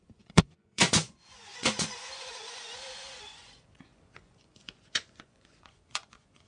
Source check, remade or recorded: remade